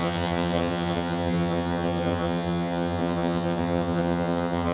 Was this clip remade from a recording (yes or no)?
yes